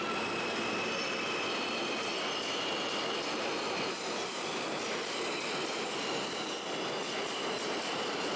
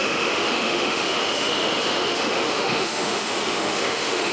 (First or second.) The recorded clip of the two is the first